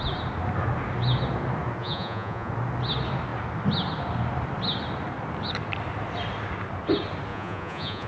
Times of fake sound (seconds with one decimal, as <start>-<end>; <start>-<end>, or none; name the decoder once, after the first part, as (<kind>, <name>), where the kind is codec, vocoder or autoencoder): 1.8-2.5 (vocoder, Vocos); 7.3-8.1